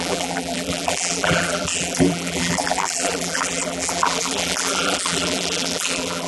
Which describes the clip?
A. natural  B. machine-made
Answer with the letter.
B